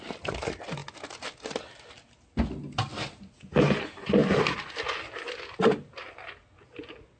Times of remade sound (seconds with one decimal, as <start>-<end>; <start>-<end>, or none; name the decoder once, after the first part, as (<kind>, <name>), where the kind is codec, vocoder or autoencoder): none

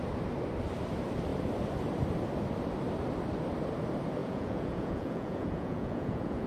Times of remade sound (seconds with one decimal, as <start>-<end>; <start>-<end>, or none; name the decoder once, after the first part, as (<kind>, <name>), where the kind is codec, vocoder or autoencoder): 4.2-6.5 (vocoder, Vocos)

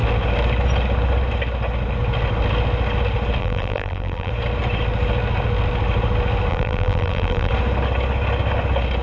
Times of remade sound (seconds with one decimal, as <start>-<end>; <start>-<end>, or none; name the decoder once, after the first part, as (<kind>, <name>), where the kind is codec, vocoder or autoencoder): 3.4-4.3 (vocoder, BigVGAN v2); 6.5-7.5

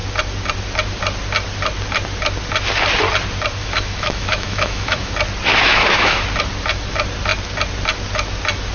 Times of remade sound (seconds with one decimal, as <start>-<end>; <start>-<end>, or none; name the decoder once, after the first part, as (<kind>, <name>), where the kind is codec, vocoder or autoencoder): 3.6-5.1 (autoencoder, DAC-VAE); 5.5-6.2